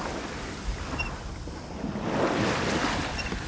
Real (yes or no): yes